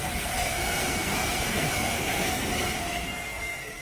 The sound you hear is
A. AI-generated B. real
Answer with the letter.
A